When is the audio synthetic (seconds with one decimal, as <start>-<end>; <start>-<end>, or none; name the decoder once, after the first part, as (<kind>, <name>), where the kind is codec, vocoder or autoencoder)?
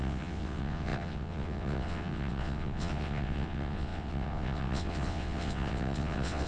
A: 0.0-6.5 (vocoder, WaveNeXt)